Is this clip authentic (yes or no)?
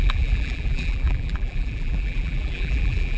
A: no